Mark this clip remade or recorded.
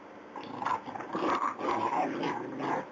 recorded